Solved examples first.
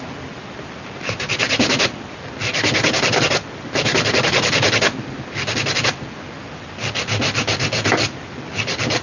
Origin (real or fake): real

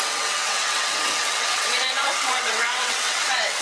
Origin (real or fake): fake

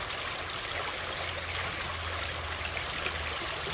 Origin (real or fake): real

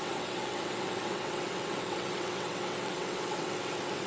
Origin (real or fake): fake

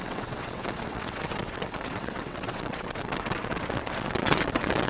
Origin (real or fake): fake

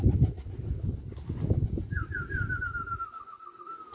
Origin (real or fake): real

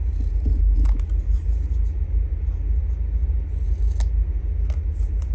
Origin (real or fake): real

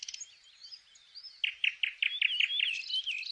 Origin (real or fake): real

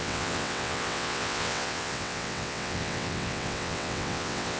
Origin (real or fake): fake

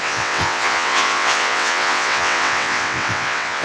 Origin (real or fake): fake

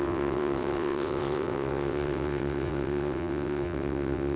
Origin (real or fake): fake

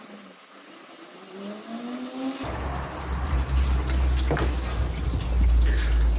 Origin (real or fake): real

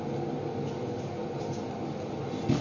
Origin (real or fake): real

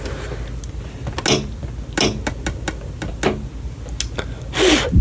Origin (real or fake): real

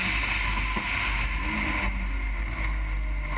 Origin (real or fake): real